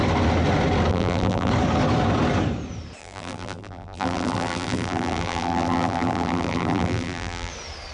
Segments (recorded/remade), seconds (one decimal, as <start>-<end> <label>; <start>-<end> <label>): 0.0-0.9 recorded; 0.9-1.5 remade; 1.5-3.0 recorded; 3.0-7.5 remade; 7.5-7.9 recorded